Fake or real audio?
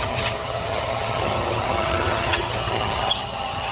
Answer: fake